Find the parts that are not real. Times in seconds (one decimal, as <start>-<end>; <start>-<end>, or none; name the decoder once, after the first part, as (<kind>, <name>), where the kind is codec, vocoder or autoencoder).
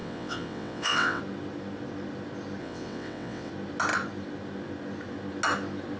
0.0-1.2 (vocoder, WaveNeXt); 2.6-3.5